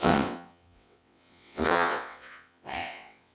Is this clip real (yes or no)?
no